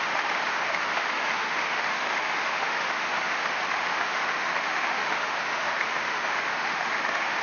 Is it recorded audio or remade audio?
remade